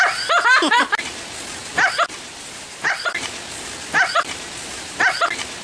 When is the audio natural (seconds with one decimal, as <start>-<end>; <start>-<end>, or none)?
0.0-5.6